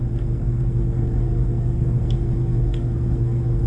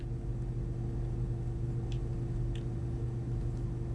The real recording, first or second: second